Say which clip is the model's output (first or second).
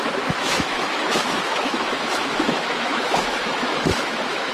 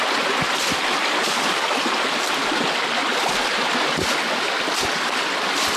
first